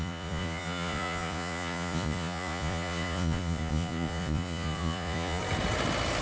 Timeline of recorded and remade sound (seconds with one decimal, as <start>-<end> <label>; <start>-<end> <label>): 0.0-5.4 remade; 5.4-6.2 recorded